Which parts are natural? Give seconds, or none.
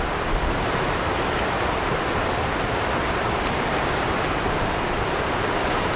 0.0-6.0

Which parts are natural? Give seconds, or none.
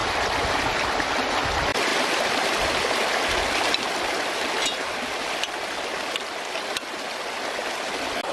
0.0-8.3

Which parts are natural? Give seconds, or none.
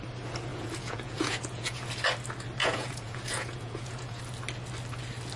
0.0-0.5; 1.9-2.6; 4.2-5.4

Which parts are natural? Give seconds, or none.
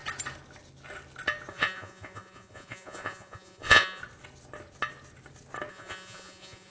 0.0-1.5; 4.0-5.7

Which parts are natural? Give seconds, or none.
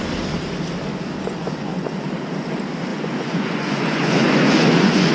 0.0-1.4; 1.9-2.9